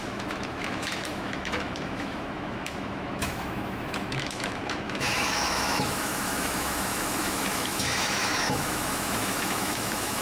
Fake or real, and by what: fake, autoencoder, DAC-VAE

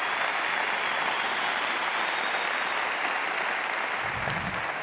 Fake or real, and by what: real